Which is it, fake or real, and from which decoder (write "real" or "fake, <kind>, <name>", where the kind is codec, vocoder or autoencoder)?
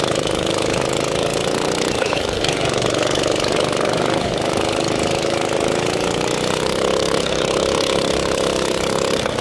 fake, codec, DAC